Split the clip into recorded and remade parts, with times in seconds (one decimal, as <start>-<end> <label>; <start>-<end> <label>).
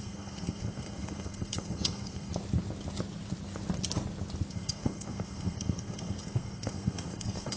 0.0-2.3 remade; 2.3-4.5 recorded; 4.5-7.6 remade